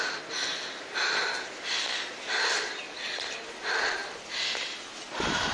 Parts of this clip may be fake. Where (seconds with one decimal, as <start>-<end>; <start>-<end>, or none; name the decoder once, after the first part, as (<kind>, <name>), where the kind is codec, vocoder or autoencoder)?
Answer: none